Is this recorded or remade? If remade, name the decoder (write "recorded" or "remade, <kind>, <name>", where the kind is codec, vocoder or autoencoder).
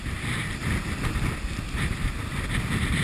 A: recorded